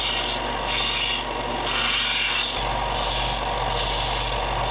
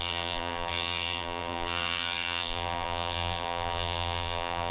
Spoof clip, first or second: second